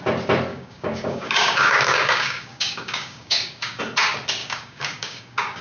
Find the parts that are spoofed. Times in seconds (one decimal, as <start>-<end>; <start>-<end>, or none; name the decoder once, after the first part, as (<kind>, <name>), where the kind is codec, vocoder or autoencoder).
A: 0.5-3.8 (codec, DAC); 4.4-5.6